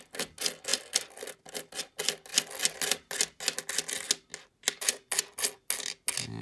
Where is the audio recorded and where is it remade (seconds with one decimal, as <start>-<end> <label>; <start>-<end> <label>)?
0.0-6.4 recorded